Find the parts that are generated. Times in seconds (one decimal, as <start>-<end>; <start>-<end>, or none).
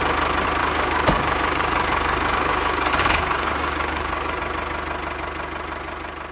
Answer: 0.6-4.4